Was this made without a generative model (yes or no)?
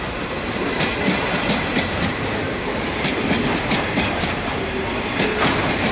no